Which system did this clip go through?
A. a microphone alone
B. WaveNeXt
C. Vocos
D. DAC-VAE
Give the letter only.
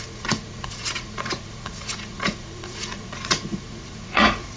C